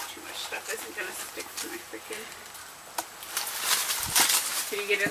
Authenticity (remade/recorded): recorded